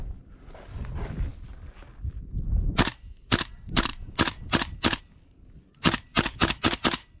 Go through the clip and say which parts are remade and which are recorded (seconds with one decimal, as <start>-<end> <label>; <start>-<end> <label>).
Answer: 0.0-7.2 recorded